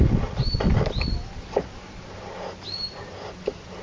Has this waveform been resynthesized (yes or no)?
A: no